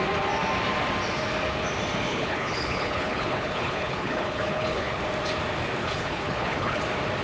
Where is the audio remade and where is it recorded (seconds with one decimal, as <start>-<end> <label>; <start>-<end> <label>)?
0.0-2.1 recorded; 2.1-5.0 remade; 5.0-5.8 recorded; 5.8-6.8 remade; 6.8-7.2 recorded